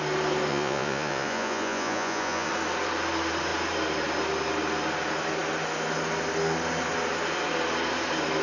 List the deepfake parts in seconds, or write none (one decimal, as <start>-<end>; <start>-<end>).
0.5-2.5